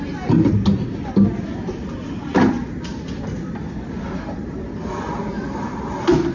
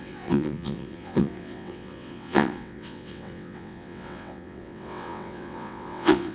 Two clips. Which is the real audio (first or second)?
first